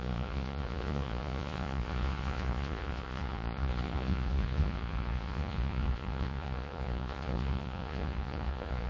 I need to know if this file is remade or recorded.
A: remade